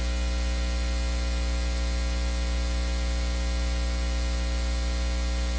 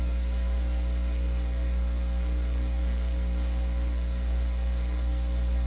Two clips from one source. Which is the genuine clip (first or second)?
first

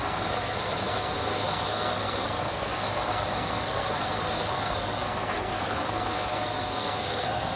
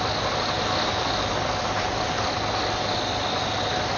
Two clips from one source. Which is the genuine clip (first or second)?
second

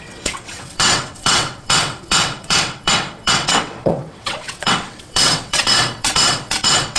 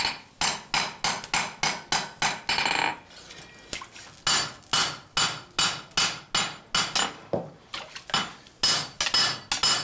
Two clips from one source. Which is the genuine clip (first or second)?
second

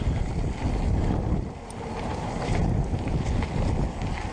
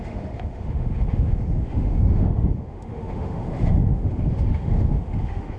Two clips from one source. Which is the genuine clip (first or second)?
first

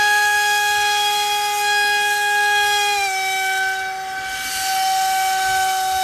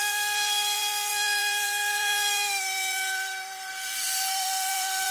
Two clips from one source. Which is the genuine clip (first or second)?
first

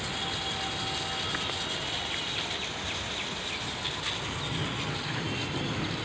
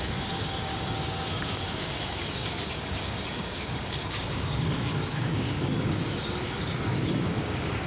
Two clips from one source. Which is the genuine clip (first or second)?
first